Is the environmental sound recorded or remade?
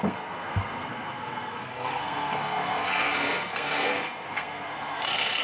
remade